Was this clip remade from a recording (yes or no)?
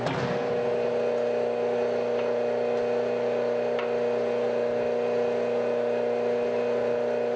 no